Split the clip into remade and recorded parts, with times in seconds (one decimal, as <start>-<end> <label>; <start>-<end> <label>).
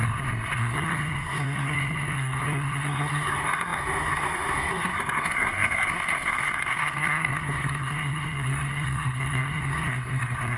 0.0-10.6 remade